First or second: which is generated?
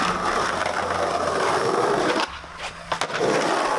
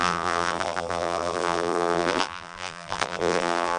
second